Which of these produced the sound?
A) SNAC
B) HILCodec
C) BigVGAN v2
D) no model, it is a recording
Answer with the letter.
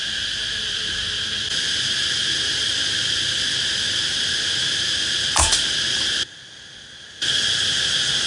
D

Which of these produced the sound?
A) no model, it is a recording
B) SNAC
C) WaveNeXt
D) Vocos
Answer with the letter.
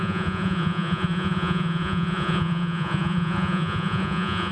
D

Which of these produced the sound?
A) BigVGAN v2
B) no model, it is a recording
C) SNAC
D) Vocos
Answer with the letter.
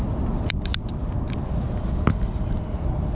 B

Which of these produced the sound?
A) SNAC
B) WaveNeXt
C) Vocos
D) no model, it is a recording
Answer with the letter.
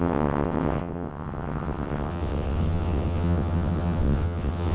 B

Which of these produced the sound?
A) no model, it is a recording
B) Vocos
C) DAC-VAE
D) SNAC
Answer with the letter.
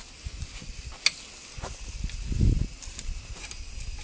A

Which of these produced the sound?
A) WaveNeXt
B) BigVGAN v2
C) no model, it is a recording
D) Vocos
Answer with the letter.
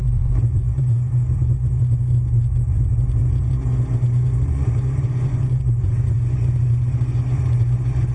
D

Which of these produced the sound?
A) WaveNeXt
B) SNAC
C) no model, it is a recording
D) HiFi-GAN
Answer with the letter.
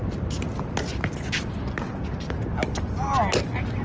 C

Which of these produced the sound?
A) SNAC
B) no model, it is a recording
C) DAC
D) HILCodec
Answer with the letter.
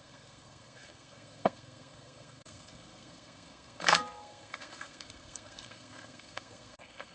A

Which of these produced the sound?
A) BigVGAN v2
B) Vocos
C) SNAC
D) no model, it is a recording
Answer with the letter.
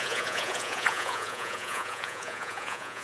B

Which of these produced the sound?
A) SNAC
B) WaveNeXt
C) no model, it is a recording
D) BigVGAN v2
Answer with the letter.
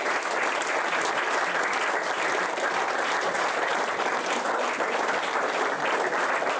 C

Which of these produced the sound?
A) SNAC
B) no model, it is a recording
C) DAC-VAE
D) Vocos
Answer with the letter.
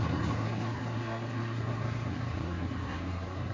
A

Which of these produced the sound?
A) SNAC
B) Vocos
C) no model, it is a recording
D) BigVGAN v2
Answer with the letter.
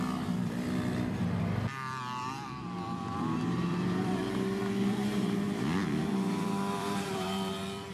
D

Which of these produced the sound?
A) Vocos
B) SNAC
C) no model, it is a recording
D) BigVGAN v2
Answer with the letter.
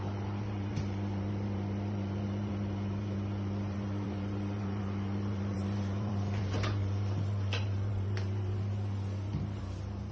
D